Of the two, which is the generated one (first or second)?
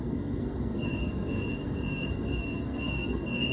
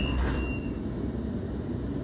first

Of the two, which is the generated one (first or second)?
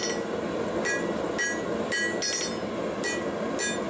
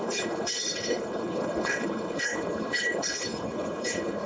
second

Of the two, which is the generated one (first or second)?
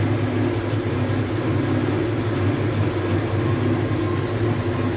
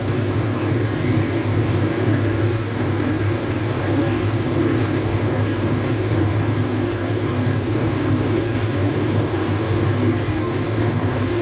second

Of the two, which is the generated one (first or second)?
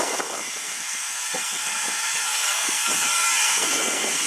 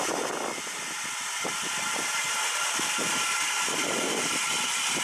first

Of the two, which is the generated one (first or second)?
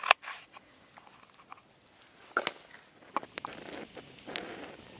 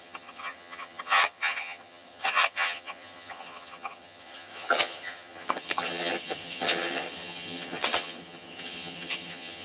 second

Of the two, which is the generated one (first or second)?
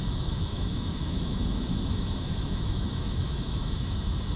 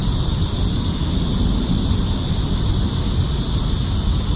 first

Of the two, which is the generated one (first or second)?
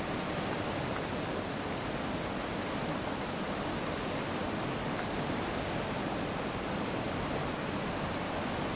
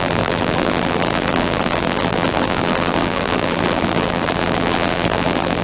second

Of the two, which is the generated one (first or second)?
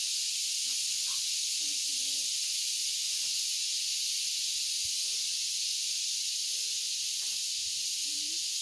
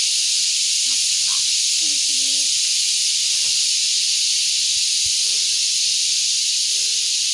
first